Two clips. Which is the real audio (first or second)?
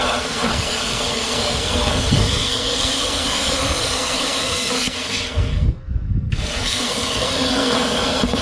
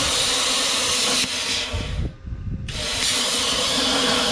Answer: second